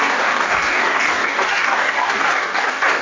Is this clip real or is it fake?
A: fake